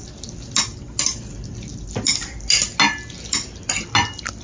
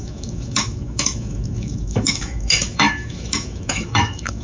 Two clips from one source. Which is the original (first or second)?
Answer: first